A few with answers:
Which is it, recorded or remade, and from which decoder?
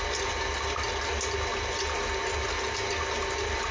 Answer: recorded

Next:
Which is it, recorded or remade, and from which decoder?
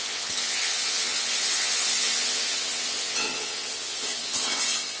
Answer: remade, vocoder, WaveNeXt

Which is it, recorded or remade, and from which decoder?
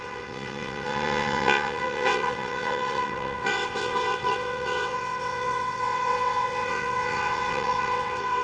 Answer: remade, vocoder, WaveNeXt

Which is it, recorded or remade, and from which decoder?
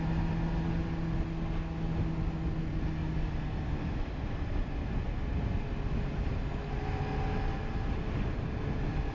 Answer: recorded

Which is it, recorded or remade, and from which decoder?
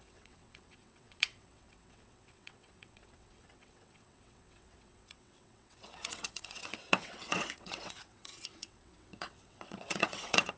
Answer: remade, vocoder, WaveNeXt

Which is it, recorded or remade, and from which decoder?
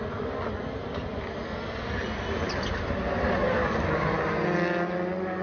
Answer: recorded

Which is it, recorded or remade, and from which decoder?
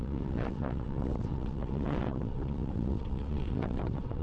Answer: remade, vocoder, WaveNeXt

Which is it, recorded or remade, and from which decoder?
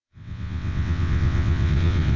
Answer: remade, vocoder, WaveNeXt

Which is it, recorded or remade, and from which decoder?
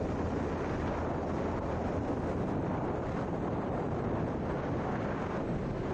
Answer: recorded